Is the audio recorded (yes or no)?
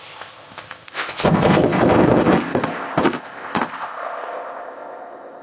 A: no